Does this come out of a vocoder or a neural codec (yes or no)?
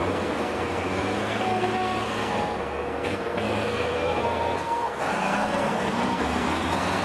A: yes